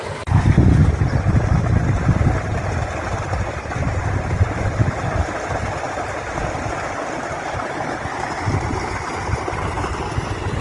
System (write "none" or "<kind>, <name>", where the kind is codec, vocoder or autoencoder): none